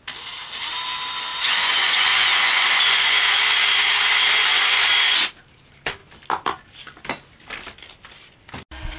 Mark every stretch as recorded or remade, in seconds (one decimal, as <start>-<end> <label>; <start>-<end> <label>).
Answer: 0.0-1.3 recorded; 1.3-3.4 remade; 3.4-4.5 recorded; 4.5-5.3 remade; 5.3-9.0 recorded